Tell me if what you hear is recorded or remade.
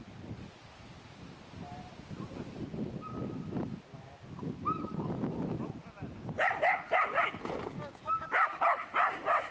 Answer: recorded